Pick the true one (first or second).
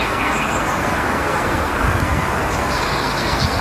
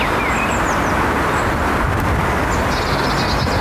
second